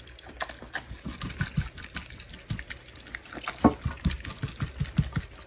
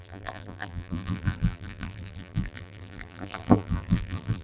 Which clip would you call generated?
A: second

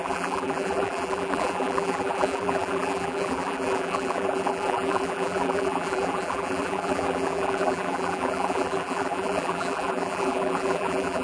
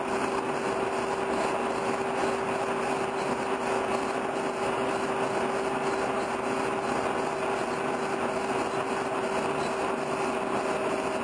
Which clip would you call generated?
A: first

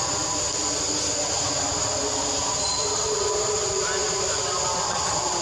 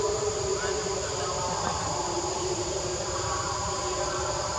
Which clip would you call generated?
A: second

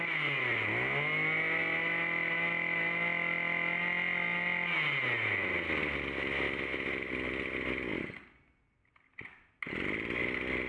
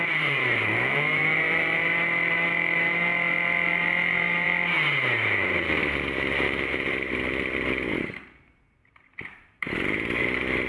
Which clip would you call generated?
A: second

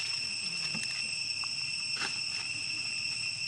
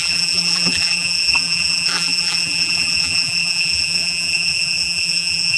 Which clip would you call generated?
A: second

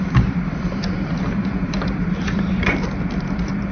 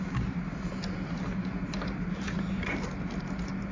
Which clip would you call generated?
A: first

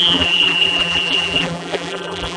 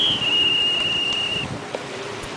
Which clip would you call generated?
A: first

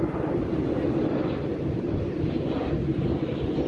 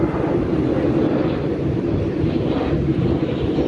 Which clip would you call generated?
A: first